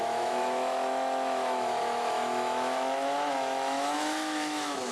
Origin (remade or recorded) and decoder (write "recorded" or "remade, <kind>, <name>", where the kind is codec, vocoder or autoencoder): remade, autoencoder, DAC-VAE